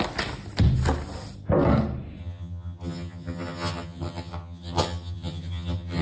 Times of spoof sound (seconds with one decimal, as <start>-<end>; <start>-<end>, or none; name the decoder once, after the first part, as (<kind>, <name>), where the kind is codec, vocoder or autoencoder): 2.2-6.0 (vocoder, HiFi-GAN)